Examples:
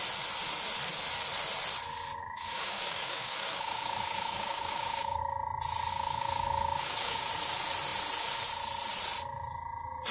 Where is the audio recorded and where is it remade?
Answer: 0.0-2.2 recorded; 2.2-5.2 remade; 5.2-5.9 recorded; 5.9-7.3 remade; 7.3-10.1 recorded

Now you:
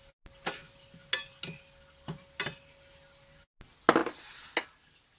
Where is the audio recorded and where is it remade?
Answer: 0.0-5.2 recorded

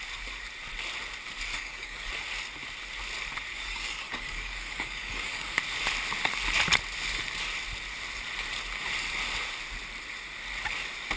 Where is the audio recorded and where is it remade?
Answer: 0.0-1.5 recorded; 1.5-2.1 remade; 2.1-3.5 recorded; 3.5-5.6 remade; 5.6-11.2 recorded